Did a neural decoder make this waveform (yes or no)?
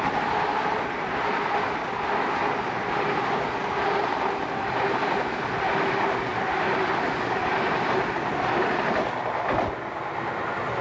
no